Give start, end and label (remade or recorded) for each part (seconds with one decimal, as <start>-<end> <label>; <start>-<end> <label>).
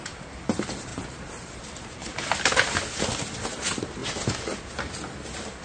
0.0-0.9 recorded; 0.9-1.6 remade; 1.6-2.0 recorded; 2.0-2.8 remade; 2.8-5.6 recorded